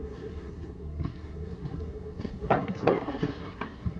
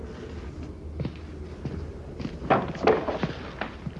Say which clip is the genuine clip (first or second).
second